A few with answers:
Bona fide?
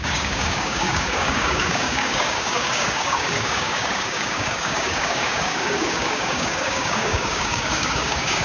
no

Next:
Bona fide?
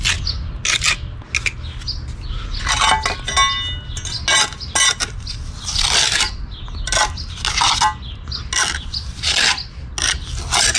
yes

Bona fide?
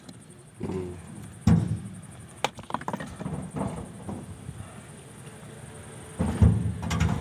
yes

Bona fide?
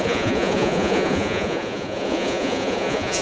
no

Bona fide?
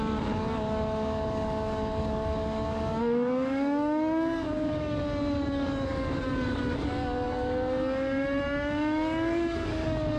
no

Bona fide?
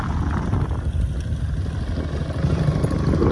yes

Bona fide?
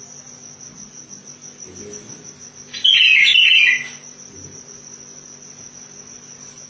yes